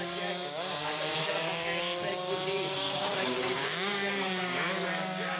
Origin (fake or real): fake